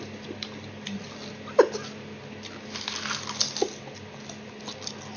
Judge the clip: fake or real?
real